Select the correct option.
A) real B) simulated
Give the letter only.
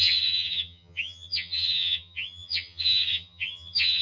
B